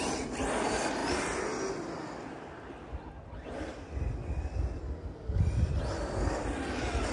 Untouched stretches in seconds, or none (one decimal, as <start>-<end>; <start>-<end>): 0.0-7.1